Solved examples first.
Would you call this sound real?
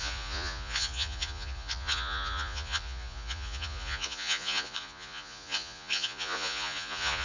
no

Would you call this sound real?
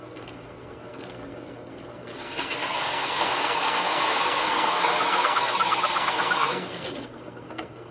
no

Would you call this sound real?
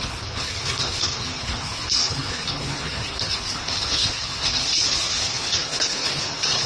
no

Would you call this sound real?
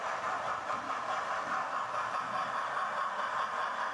yes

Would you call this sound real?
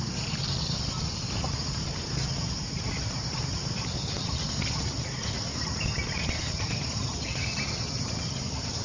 yes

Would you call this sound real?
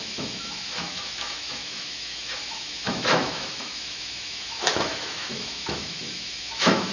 no